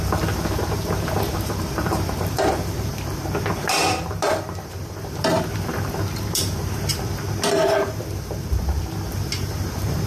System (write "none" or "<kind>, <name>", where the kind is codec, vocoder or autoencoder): vocoder, BigVGAN v2